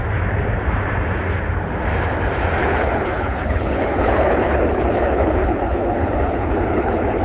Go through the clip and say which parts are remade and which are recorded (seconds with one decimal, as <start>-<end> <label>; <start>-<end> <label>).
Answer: 0.0-2.6 recorded; 2.6-7.2 remade